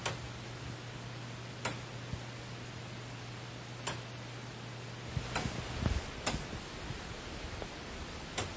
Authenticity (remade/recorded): recorded